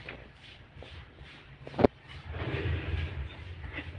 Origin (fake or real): fake